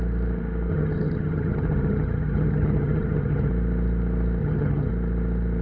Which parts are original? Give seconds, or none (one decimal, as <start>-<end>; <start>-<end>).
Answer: 0.0-0.7; 3.5-4.4; 4.9-5.6